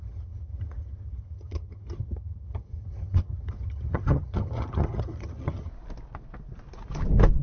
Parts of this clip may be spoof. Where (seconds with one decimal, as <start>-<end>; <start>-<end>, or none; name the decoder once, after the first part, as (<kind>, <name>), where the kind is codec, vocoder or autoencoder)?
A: 0.0-5.7 (vocoder, HiFi-GAN)